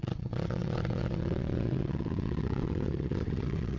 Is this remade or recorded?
remade